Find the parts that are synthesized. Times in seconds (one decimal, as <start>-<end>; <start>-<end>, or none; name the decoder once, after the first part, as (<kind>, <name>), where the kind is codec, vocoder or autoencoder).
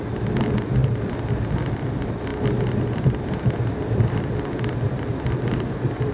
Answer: 0.0-0.8 (vocoder, BigVGAN v2); 1.6-2.3; 3.0-6.1